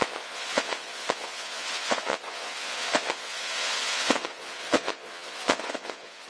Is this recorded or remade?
remade